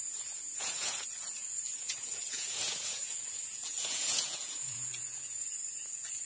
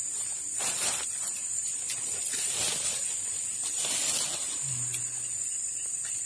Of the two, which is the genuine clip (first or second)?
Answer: second